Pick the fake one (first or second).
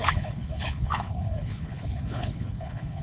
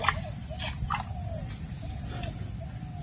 first